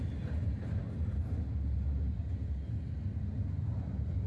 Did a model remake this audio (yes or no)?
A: no